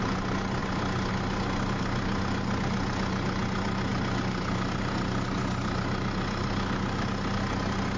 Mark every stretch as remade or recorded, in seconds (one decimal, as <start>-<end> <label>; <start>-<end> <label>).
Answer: 0.0-8.0 recorded